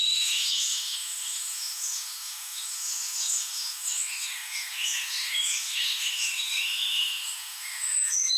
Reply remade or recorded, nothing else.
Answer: remade